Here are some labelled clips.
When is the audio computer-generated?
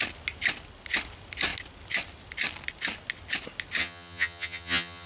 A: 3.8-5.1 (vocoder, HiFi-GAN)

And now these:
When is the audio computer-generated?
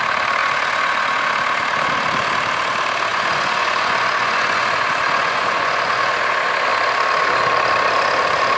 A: 0.4-1.3 (vocoder, Vocos); 3.1-6.2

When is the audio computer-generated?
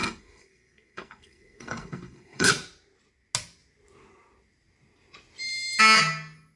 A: 0.0-2.5 (codec, SNAC)